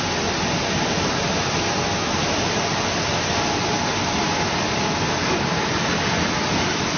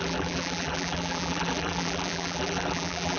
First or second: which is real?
first